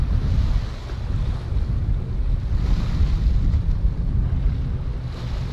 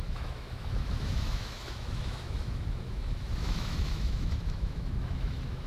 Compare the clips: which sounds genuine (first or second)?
first